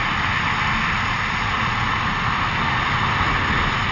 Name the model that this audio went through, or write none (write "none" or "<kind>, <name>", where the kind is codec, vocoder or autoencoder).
none